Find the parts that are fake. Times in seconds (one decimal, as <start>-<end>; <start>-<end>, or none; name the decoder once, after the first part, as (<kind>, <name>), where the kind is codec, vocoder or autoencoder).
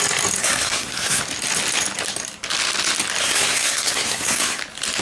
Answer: 0.4-1.2 (codec, SNAC); 3.2-4.6